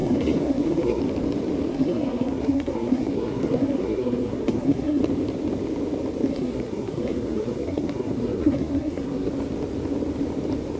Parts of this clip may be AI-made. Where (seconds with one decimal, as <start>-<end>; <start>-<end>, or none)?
0.0-1.0; 1.7-5.0; 6.3-9.3